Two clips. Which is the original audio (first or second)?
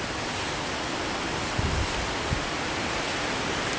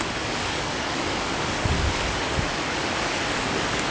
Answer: first